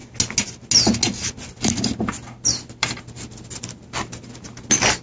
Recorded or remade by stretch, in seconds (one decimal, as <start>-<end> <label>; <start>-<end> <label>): 0.0-5.0 recorded